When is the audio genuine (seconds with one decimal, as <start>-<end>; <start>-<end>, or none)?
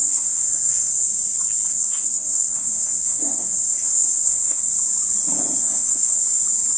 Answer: 0.9-1.7; 4.7-5.6; 6.2-6.8